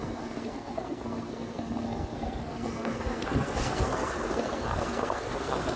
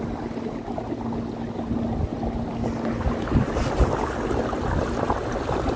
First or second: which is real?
second